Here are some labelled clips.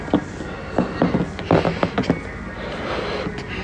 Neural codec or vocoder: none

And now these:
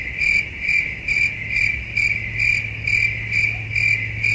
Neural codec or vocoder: none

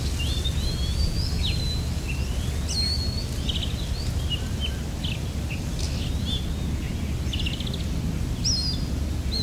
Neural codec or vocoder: none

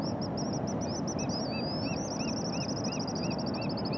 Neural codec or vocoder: none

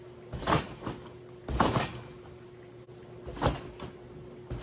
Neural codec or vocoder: none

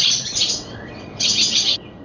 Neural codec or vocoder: vocoder, WaveNeXt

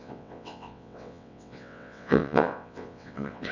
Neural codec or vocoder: vocoder, WaveNeXt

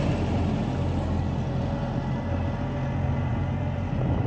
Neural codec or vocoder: none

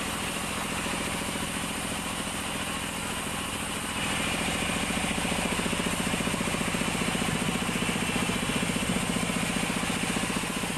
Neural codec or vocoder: none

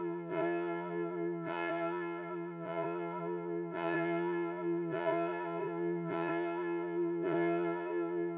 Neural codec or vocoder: vocoder, Vocos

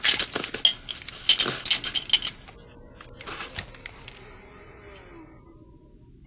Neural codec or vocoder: none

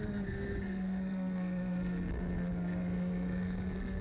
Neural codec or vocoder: codec, SNAC